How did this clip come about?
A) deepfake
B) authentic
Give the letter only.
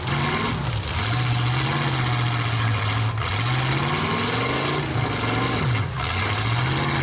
B